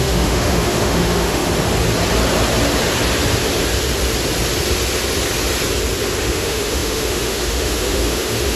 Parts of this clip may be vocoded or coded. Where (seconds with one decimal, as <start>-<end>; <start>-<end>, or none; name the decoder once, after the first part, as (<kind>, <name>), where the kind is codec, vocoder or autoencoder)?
0.0-1.4 (autoencoder, DAC-VAE); 6.2-8.6